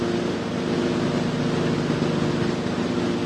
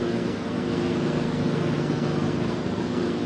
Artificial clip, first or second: second